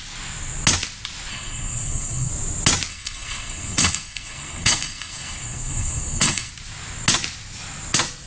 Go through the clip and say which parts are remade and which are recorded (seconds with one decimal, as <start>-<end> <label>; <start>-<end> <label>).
0.0-1.3 recorded; 1.3-2.3 remade; 2.3-2.9 recorded; 2.9-6.5 remade; 6.5-8.3 recorded